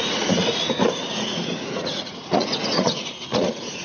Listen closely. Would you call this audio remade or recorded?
remade